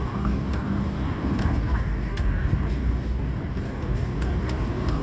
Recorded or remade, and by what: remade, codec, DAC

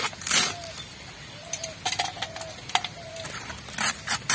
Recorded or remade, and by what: recorded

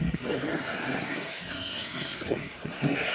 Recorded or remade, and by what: remade, codec, SNAC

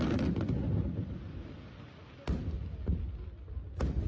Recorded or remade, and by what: recorded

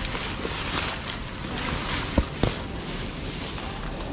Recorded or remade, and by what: recorded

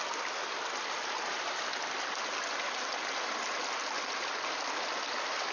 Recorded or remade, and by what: recorded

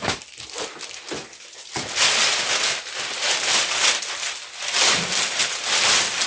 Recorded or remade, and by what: recorded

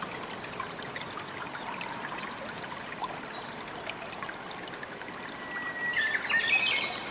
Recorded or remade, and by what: recorded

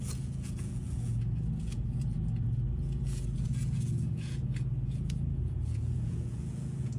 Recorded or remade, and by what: remade, vocoder, Vocos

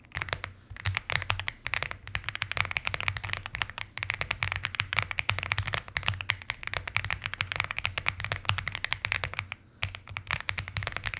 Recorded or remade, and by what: recorded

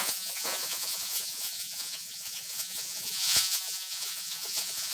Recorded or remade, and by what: remade, vocoder, Vocos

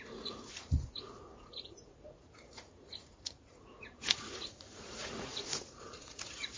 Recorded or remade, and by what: remade, vocoder, Vocos